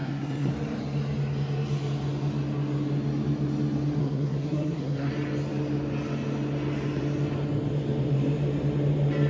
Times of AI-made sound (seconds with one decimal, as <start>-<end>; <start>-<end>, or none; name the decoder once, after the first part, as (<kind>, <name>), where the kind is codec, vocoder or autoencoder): 0.0-0.5 (codec, SNAC); 4.0-5.1